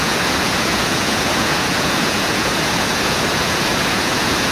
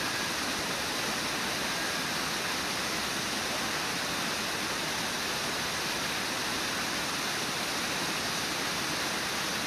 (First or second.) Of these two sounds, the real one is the second